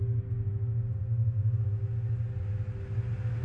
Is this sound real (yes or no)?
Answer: yes